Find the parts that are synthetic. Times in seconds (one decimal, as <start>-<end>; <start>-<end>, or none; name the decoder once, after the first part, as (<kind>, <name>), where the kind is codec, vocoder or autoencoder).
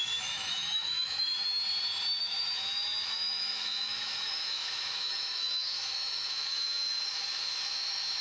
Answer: 0.0-1.6 (autoencoder, DAC-VAE); 2.2-8.2